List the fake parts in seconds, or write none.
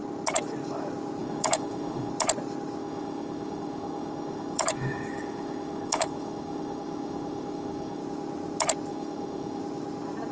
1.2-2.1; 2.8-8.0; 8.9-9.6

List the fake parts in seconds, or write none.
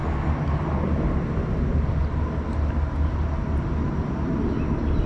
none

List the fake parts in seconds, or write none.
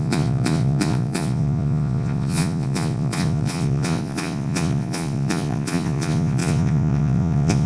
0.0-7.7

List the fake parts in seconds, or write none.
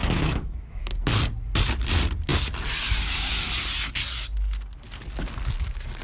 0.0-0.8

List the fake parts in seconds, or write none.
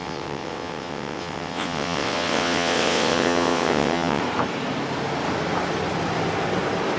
0.0-4.2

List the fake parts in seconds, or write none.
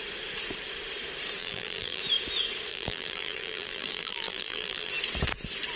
1.4-2.0; 2.7-4.9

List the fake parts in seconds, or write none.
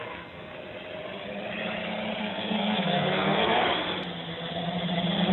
0.0-0.5; 2.2-3.6